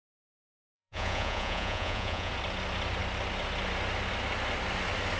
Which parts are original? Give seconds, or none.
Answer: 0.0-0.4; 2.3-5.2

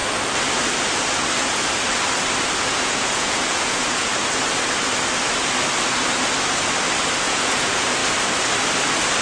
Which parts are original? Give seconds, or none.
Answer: 0.0-2.6; 4.1-7.2; 8.0-9.2

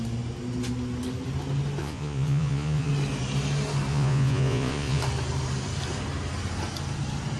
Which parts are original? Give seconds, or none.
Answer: 0.0-1.8; 2.9-3.9; 5.0-7.4

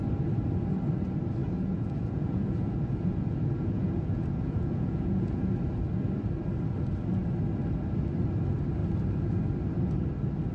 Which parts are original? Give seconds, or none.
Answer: 0.0-1.4; 5.4-10.5

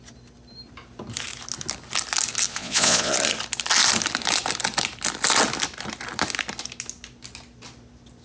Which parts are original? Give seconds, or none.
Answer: 0.0-2.5; 3.1-8.2